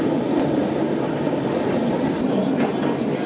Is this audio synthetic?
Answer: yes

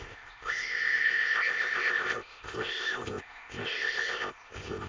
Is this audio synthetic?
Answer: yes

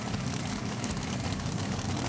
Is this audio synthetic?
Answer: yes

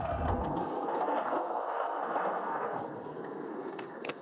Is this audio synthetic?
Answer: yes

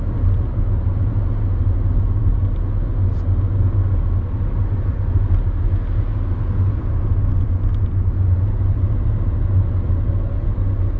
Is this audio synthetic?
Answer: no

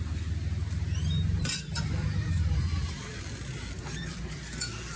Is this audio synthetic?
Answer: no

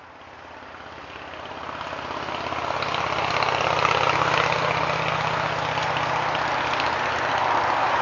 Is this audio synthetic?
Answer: no